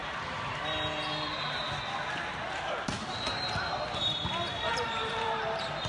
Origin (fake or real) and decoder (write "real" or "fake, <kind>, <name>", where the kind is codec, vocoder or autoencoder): real